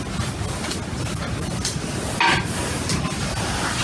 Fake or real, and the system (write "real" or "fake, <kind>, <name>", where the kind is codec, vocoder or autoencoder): real